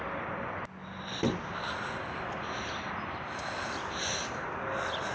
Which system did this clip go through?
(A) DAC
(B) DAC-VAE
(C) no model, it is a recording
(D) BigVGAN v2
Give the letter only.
C